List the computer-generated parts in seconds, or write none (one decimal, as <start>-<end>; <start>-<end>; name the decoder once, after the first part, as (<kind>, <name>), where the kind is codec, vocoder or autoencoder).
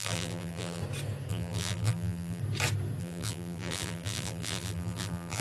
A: 0.0-0.8 (vocoder, BigVGAN v2); 1.3-2.4; 3.0-5.4